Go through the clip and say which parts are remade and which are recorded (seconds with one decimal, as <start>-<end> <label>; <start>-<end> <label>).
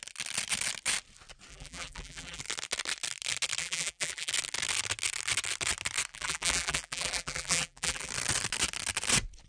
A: 0.0-1.5 recorded; 1.5-2.4 remade; 2.4-3.6 recorded; 3.6-4.3 remade; 4.3-6.1 recorded; 6.1-8.1 remade; 8.1-9.5 recorded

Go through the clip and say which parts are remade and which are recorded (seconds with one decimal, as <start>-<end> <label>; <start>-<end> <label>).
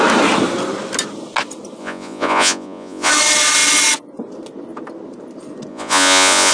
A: 0.0-1.8 recorded; 1.8-3.1 remade; 3.1-5.7 recorded; 5.7-6.5 remade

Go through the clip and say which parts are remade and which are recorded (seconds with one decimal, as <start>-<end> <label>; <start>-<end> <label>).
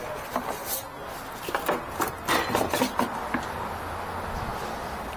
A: 0.0-5.2 recorded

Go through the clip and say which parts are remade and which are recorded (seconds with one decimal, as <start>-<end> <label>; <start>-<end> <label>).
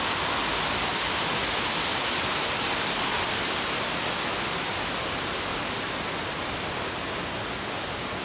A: 0.0-8.2 recorded